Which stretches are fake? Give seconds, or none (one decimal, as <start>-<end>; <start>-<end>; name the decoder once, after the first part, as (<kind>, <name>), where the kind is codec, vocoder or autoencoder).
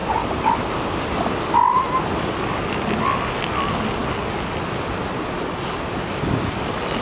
none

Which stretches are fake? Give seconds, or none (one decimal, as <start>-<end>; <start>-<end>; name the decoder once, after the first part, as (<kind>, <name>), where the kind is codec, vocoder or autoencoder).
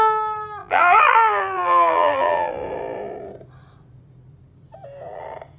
0.6-2.5 (vocoder, BigVGAN v2)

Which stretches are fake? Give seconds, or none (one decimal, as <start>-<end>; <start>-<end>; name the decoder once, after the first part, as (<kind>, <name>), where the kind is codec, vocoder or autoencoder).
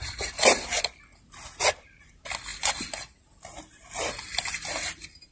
none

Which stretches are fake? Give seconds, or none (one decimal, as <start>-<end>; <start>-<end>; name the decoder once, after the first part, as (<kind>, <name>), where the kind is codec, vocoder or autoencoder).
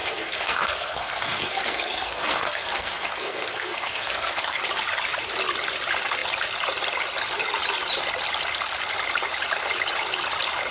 0.0-4.6 (codec, SNAC)